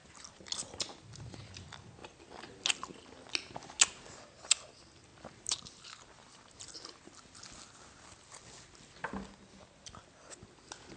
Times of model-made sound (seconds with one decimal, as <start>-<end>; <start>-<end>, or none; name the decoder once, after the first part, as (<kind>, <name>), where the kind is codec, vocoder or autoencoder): none